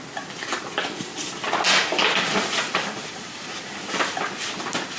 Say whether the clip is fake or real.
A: real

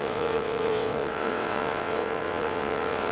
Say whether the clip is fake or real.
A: fake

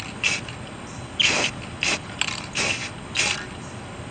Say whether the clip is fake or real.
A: real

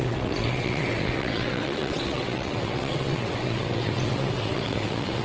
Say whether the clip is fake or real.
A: fake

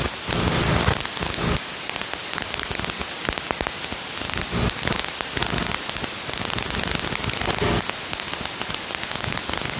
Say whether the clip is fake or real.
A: real